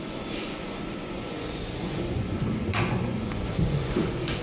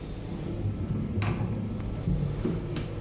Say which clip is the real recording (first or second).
second